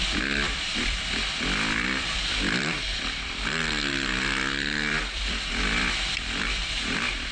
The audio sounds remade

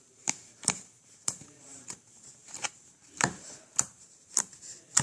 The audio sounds remade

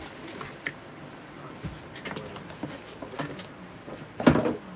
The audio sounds recorded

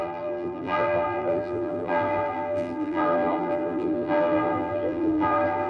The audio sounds remade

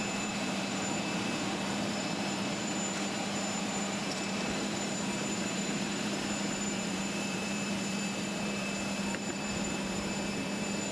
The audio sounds remade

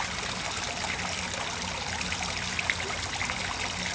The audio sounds recorded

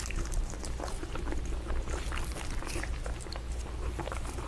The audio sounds recorded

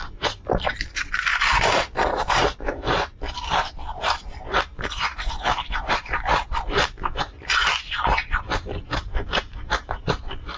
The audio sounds remade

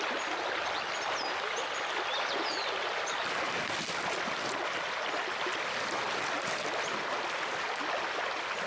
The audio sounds recorded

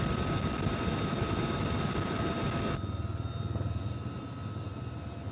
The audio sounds recorded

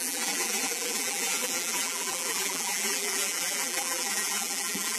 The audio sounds remade